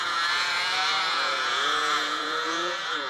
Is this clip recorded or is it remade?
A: remade